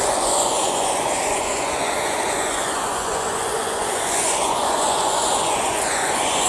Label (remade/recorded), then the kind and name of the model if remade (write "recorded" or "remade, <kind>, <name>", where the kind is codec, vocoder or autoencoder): remade, vocoder, Vocos